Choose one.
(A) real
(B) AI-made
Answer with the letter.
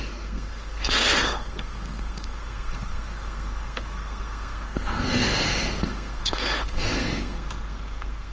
B